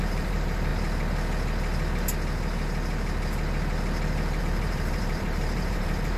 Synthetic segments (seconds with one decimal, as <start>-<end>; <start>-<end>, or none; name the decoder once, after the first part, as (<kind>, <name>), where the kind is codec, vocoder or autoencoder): 0.0-0.7 (vocoder, BigVGAN v2); 4.4-6.2